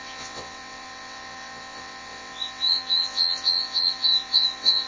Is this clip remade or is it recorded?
remade